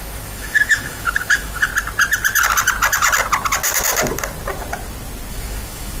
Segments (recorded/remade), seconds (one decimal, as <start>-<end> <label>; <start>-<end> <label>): 0.0-1.7 remade; 1.7-5.3 recorded; 5.3-6.0 remade